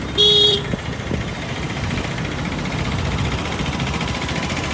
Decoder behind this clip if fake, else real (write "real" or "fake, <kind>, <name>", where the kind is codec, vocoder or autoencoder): real